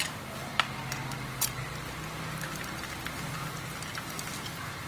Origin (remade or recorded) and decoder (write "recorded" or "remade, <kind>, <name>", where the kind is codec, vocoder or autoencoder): recorded